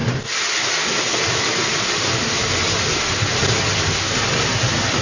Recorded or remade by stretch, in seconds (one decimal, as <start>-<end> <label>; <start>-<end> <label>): 0.0-5.0 recorded